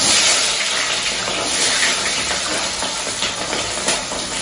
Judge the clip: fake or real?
real